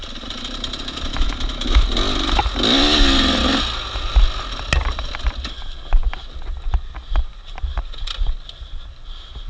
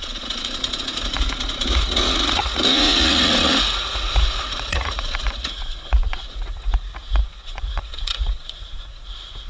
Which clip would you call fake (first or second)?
second